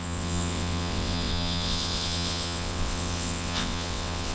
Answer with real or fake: fake